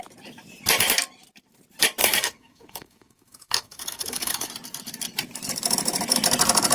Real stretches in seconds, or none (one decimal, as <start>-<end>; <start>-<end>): 0.0-2.0; 4.5-6.7